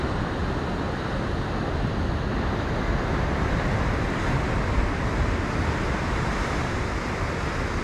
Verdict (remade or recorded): recorded